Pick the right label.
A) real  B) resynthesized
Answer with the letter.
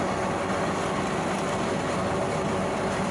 A